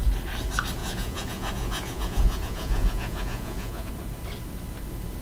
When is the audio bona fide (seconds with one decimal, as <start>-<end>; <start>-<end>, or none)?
0.0-0.8; 3.9-5.2